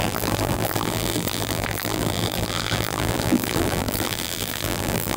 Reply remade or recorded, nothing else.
remade